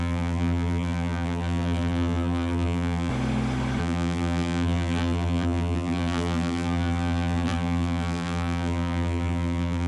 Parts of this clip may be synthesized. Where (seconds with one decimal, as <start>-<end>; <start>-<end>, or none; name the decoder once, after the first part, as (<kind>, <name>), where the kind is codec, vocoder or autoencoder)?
0.0-3.1 (vocoder, BigVGAN v2); 3.8-9.9